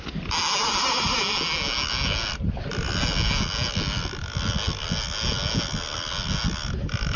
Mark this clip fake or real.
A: real